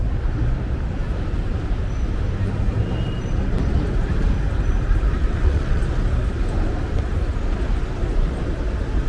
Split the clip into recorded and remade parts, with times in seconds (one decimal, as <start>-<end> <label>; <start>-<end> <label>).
0.0-5.2 recorded; 5.2-5.8 remade; 5.8-9.1 recorded